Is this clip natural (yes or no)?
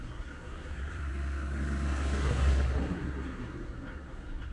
no